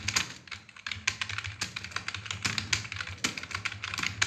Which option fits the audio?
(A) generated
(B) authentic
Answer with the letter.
B